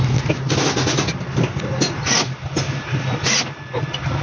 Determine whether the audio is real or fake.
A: real